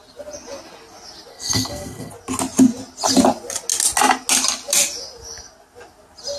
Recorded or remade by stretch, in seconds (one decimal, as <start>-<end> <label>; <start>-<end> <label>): 0.0-1.3 recorded; 1.3-2.1 remade; 2.1-6.4 recorded